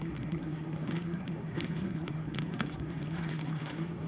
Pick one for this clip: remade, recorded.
remade